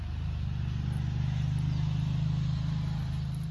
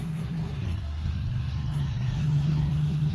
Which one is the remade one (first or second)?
second